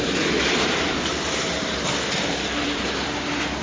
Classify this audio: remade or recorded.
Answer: remade